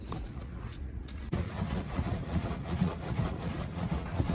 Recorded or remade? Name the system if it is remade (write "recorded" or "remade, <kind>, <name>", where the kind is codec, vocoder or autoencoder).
remade, vocoder, Vocos